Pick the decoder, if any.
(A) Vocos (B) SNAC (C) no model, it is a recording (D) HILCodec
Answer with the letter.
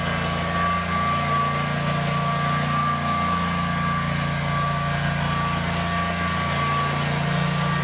C